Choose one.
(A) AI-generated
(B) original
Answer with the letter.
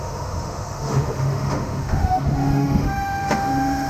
A